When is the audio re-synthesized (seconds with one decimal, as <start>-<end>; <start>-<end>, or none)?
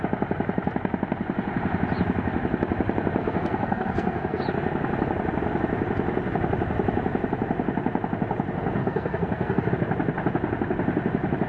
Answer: 3.2-4.4; 8.8-9.7